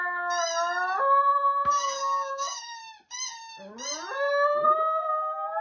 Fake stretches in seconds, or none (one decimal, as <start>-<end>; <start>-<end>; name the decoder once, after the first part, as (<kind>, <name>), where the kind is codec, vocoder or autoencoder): 1.3-2.8 (codec, DAC)

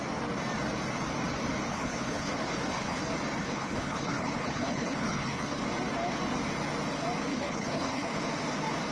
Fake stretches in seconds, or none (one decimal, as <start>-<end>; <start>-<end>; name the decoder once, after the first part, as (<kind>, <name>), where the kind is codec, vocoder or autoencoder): 1.7-3.0 (codec, HILCodec); 3.4-5.6; 7.3-8.2